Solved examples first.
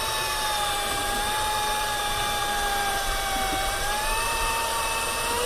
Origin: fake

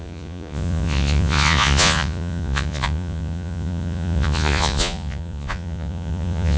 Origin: fake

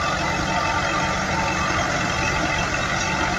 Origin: real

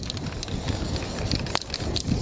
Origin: real